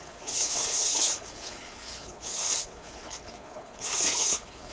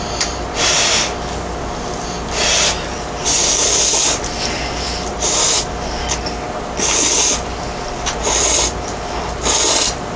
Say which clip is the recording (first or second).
second